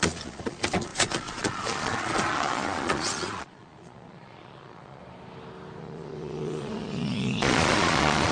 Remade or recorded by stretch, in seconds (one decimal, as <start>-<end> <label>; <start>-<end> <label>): 0.0-5.0 remade; 5.0-5.8 recorded; 5.8-8.3 remade